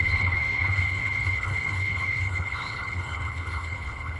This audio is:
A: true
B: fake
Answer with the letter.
B